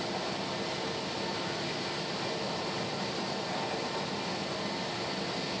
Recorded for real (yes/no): yes